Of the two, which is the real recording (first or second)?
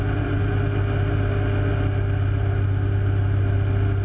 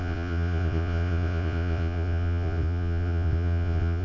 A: first